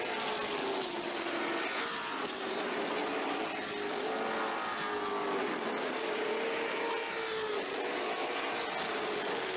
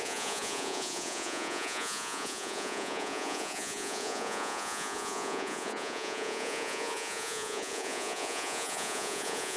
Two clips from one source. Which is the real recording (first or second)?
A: first